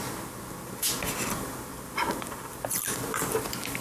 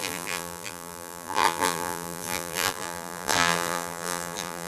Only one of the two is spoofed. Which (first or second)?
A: second